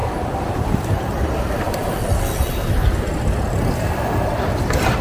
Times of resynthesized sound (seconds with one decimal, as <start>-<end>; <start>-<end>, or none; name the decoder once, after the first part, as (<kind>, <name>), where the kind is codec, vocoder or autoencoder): 0.0-3.0 (vocoder, BigVGAN v2)